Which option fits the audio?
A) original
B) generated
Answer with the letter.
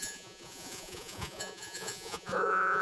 B